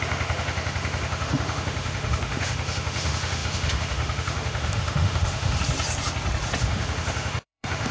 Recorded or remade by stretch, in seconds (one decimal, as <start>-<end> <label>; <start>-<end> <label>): 0.0-5.6 remade; 5.6-6.6 recorded; 6.6-7.9 remade